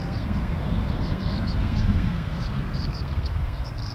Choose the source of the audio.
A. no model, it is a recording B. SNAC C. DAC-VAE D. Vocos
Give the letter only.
B